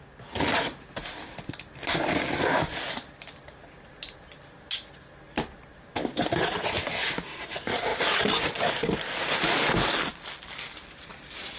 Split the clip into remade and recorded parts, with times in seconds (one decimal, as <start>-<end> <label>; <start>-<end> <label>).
0.0-11.6 recorded